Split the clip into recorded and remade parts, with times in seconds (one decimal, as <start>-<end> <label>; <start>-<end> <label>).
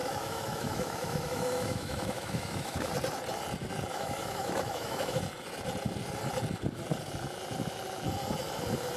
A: 0.0-2.9 remade; 2.9-3.9 recorded; 3.9-5.2 remade; 5.2-9.0 recorded